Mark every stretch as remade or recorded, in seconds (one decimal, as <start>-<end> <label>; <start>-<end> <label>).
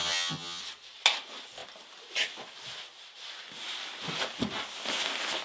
0.0-0.6 remade; 0.6-5.4 recorded